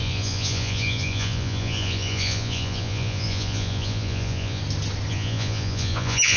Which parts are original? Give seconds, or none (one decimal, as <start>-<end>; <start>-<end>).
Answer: 4.6-5.1